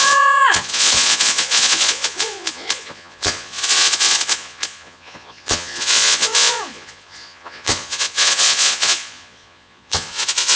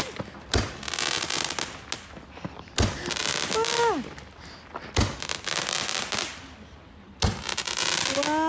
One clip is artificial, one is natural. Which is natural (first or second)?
second